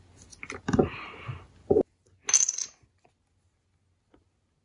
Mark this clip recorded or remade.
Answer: recorded